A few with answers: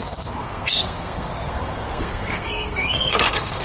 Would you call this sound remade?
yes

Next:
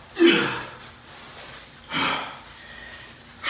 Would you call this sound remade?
no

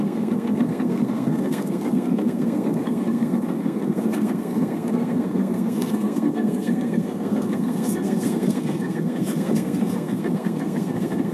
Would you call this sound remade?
yes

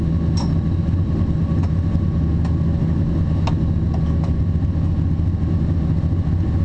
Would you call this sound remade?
no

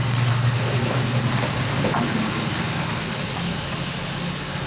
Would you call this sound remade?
no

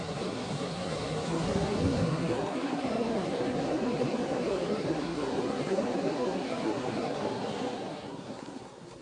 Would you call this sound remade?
yes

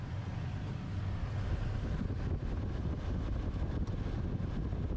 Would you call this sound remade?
no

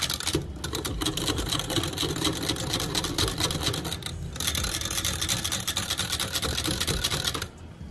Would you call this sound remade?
no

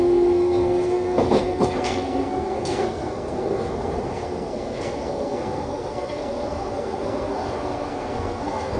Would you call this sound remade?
yes